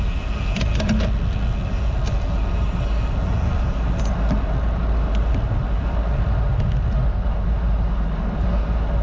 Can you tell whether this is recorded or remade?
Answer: recorded